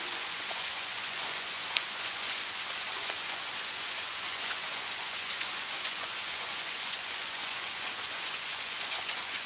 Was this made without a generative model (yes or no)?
no